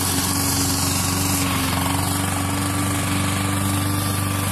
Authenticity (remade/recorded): recorded